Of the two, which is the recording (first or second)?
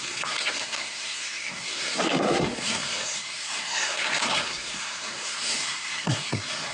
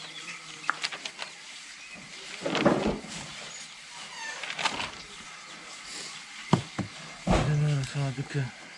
second